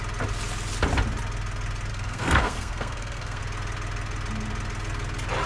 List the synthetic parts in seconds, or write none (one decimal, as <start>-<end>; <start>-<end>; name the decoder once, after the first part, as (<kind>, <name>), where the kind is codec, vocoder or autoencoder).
1.9-3.4 (codec, SNAC)